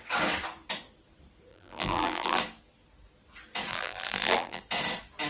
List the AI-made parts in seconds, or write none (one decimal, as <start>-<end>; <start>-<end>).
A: 1.5-2.4; 3.7-4.6